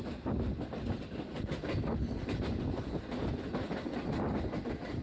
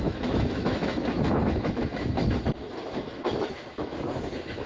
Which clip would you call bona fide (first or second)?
first